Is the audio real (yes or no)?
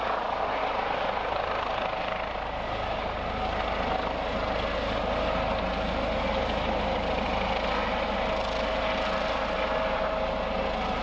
yes